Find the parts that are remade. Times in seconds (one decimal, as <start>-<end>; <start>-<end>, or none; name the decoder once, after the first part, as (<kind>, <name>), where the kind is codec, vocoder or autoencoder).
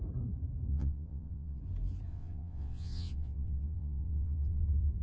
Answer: 0.7-1.6 (vocoder, WaveNeXt); 2.1-4.6